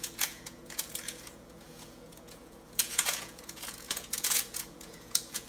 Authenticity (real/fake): fake